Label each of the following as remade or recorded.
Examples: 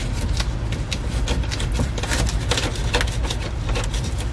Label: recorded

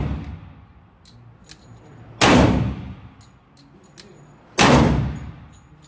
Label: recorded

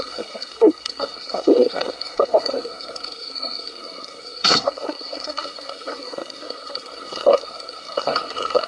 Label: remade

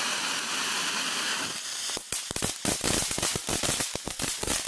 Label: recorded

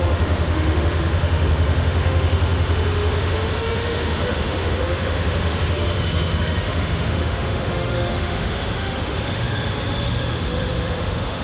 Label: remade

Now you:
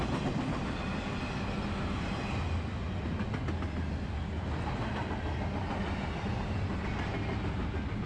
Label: recorded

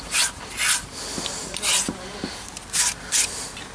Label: recorded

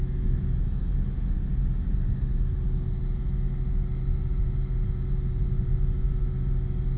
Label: recorded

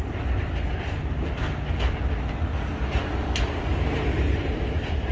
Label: recorded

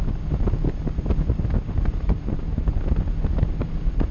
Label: recorded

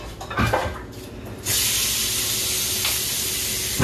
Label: recorded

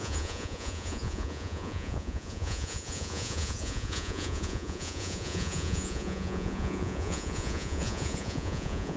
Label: remade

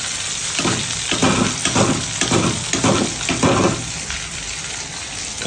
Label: recorded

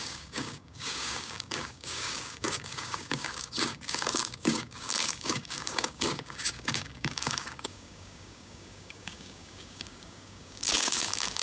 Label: remade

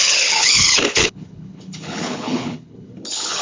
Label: remade